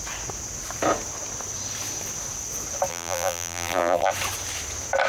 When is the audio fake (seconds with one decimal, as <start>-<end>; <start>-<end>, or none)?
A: 2.9-4.1